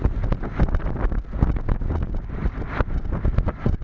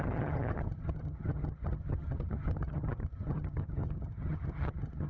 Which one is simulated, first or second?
second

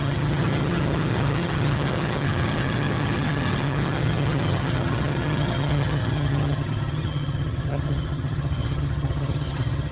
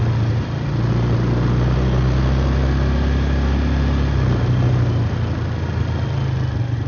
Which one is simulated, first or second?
first